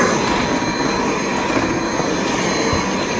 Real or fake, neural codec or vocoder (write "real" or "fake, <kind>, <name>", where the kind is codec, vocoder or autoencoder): real